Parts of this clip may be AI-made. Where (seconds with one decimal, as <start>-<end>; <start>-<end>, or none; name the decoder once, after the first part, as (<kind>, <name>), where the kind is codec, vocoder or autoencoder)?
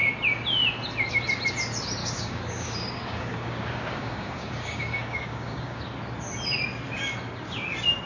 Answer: 2.0-5.8 (codec, DAC)